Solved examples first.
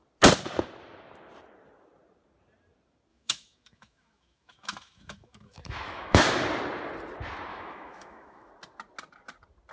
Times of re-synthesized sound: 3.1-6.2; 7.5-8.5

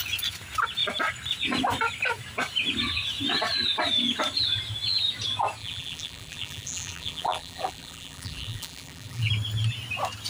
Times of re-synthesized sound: 5.6-9.3

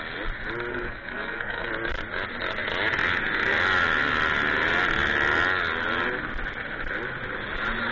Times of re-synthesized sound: 0.7-1.7

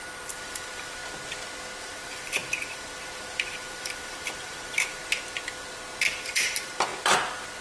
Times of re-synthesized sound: 0.0-1.0; 1.8-5.0; 6.1-6.9